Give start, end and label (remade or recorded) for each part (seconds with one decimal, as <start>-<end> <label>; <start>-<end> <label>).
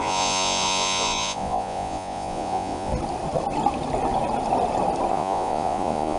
0.0-2.9 remade; 2.9-5.1 recorded; 5.1-6.2 remade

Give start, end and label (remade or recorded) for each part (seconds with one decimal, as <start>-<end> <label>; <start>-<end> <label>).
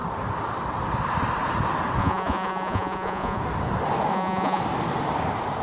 0.0-2.0 recorded; 2.0-3.4 remade; 3.4-4.1 recorded; 4.1-4.6 remade; 4.6-5.6 recorded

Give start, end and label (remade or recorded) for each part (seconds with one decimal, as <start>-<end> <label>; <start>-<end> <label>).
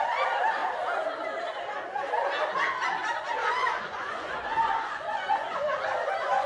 0.0-3.4 recorded; 3.4-6.5 remade